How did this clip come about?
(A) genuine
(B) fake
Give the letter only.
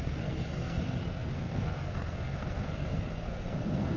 B